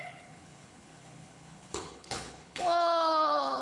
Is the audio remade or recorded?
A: remade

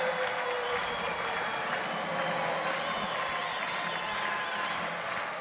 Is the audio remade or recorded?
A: recorded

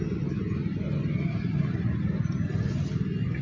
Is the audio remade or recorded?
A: recorded